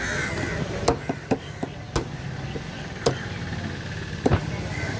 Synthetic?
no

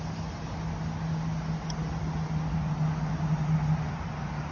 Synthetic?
no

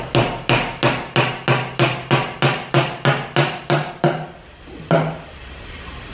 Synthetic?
no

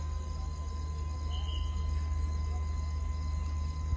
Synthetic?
no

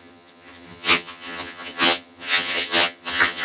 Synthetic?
yes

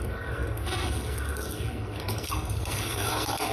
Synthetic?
yes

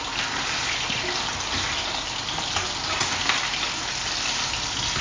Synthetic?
no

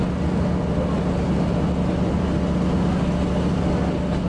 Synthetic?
no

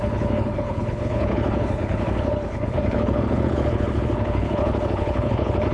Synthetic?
yes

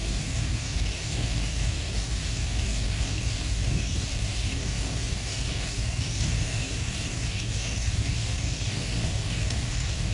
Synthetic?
yes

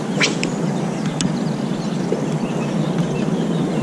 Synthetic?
no